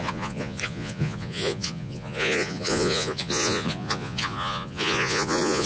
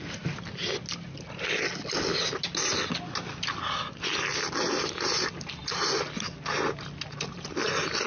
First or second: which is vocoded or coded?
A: first